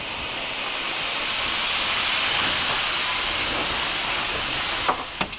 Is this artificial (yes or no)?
no